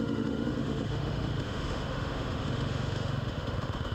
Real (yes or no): no